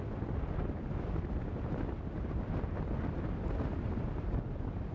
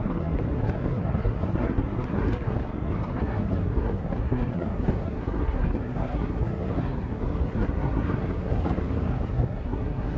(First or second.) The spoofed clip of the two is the second